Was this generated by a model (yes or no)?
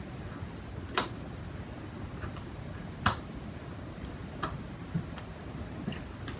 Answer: no